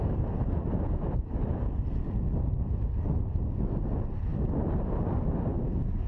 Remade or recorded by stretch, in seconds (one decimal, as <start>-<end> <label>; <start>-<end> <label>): 0.0-4.3 recorded; 4.3-4.9 remade; 4.9-6.1 recorded